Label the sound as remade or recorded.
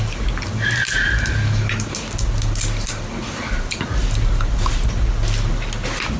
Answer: recorded